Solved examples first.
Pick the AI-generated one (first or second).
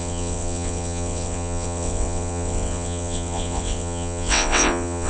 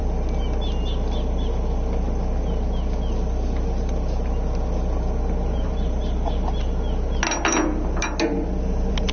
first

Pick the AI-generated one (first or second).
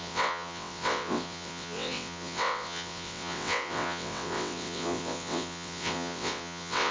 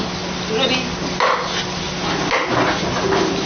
first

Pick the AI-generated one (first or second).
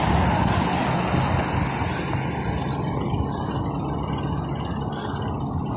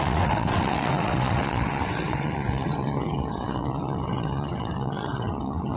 second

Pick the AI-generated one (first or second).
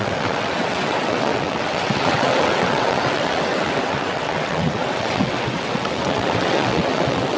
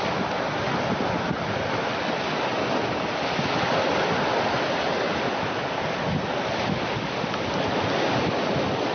first